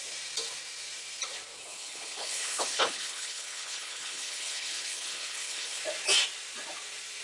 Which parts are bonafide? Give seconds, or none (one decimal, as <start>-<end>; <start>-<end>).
0.0-1.7; 5.8-7.2